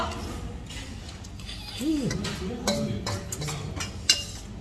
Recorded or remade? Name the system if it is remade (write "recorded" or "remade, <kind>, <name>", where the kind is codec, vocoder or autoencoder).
recorded